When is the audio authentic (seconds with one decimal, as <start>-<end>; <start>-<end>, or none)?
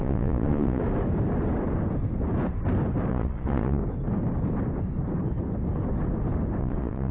0.8-3.1; 3.8-6.6